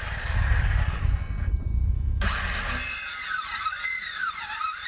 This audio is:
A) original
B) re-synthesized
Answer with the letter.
A